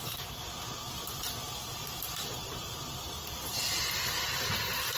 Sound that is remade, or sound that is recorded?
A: recorded